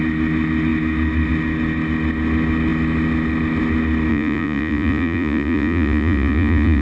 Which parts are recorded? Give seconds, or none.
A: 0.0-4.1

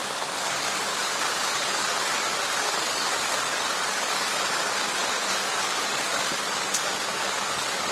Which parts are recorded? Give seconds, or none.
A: none

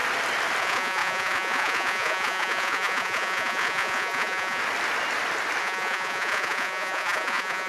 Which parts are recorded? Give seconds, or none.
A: 0.0-0.6; 4.6-5.6

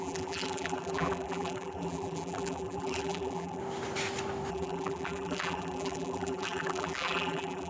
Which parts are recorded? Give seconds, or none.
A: 3.6-4.5

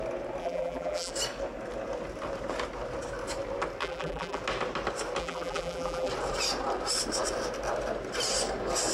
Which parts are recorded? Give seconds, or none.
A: 0.0-0.4; 1.1-3.8; 4.4-5.2; 6.1-8.9

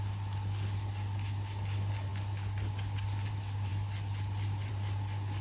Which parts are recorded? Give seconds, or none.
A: 0.0-5.4

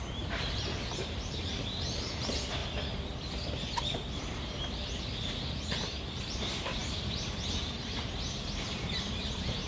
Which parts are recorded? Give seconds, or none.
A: 2.6-6.2

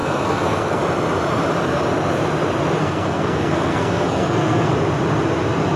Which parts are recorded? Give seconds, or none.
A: 0.8-2.8; 4.7-5.8